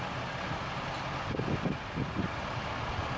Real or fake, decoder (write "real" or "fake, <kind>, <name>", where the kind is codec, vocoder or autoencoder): real